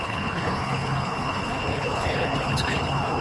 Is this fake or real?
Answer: fake